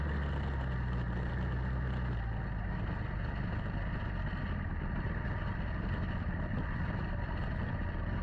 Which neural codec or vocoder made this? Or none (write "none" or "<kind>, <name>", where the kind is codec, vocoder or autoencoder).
none